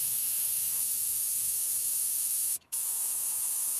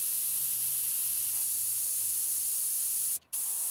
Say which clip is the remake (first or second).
first